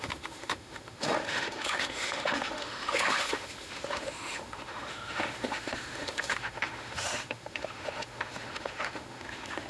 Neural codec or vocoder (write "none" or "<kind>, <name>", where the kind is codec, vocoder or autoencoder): autoencoder, DAC-VAE